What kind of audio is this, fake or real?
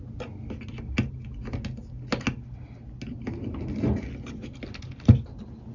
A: real